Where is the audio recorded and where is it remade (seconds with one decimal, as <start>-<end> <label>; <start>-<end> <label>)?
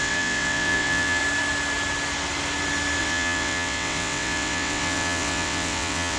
0.0-1.2 remade; 1.2-3.0 recorded; 3.0-6.2 remade